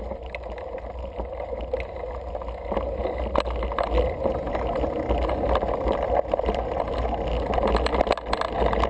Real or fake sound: real